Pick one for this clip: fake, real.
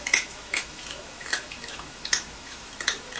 fake